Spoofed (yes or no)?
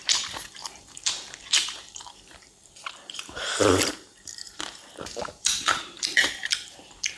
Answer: yes